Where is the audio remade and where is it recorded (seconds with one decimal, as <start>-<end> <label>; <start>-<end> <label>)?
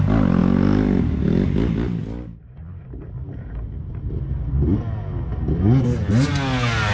0.0-6.9 recorded